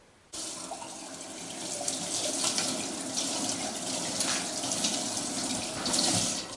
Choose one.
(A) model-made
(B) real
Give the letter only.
B